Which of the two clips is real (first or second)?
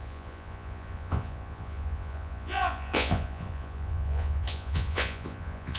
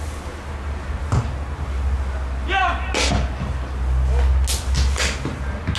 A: second